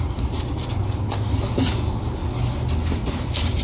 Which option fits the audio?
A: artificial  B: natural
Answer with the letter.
B